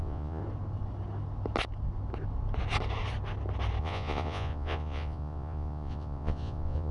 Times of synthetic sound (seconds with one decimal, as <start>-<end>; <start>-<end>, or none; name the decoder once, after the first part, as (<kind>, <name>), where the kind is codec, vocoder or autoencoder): 0.0-0.4 (vocoder, Vocos); 3.8-6.9